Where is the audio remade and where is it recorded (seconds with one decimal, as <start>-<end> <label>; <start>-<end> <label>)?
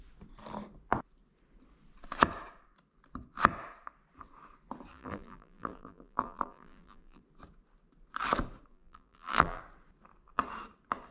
0.0-4.9 recorded; 4.9-7.2 remade; 7.2-8.7 recorded; 8.7-9.6 remade; 9.6-11.1 recorded